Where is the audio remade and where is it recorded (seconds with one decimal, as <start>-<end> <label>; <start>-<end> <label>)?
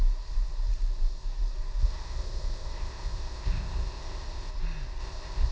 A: 0.0-1.8 recorded; 1.8-4.5 remade; 4.5-5.0 recorded; 5.0-5.5 remade